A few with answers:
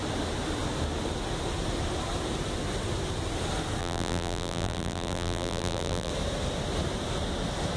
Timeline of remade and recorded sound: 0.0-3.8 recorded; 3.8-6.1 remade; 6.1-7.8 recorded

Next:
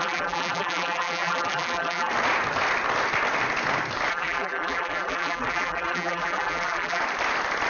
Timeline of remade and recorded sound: 0.0-2.1 remade; 2.1-4.1 recorded; 4.1-7.0 remade; 7.0-7.7 recorded

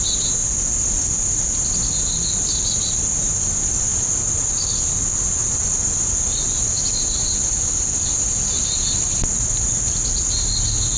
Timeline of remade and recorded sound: 0.0-11.0 recorded

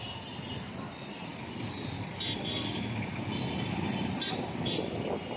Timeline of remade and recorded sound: 0.0-1.3 recorded; 1.3-4.4 remade; 4.4-5.4 recorded

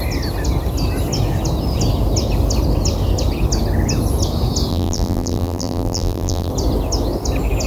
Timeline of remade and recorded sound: 0.0-4.7 recorded; 4.7-6.5 remade; 6.5-7.7 recorded

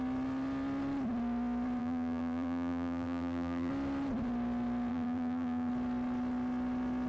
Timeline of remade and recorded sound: 0.0-1.8 recorded; 1.8-3.7 remade; 3.7-4.9 recorded; 4.9-5.7 remade; 5.7-7.1 recorded

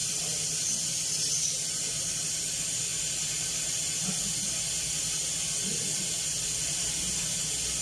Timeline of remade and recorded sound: 0.0-1.1 remade; 1.1-7.8 recorded

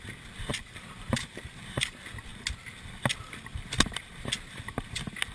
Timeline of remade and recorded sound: 0.0-0.5 recorded; 0.5-1.9 remade; 1.9-5.3 recorded